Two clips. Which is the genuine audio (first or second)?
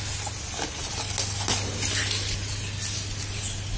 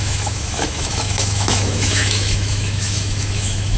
first